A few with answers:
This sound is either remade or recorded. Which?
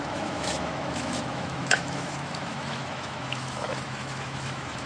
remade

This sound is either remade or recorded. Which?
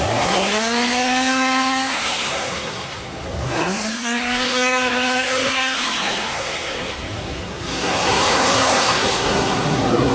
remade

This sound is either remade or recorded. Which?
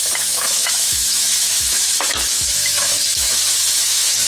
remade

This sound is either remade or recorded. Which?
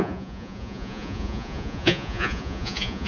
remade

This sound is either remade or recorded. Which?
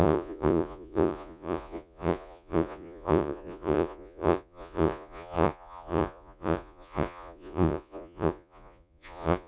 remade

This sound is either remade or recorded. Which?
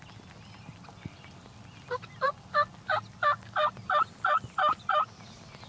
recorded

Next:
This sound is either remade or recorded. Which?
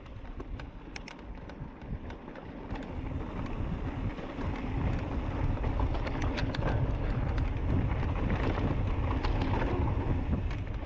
recorded